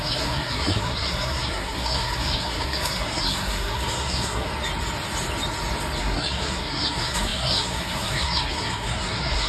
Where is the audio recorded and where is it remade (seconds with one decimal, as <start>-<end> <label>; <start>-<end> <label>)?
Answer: 0.0-4.5 remade; 4.5-6.0 recorded; 6.0-9.5 remade